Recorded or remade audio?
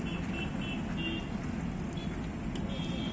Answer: recorded